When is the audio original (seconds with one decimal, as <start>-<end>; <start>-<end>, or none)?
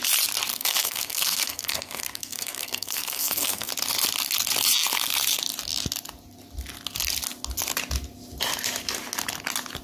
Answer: 0.0-0.5; 3.7-9.8